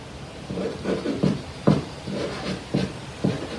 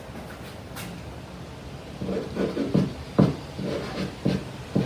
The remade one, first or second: first